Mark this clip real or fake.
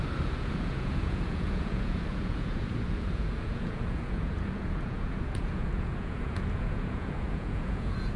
fake